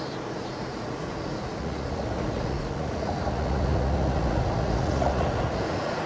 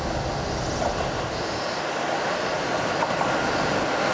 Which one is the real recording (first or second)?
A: second